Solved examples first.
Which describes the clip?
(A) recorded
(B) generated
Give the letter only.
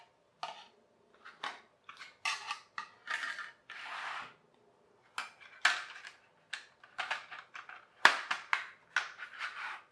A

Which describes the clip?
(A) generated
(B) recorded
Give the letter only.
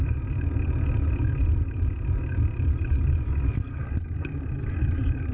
B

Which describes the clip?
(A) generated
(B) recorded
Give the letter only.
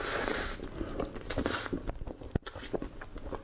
B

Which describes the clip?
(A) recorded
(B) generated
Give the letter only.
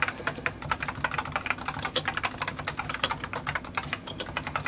A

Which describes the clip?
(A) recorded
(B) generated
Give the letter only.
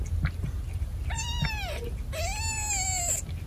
A